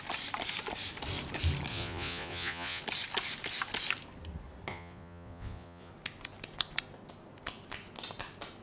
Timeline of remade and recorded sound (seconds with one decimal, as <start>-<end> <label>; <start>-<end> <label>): 0.0-1.7 recorded; 1.7-2.8 remade; 2.8-4.7 recorded; 4.7-5.9 remade; 5.9-8.6 recorded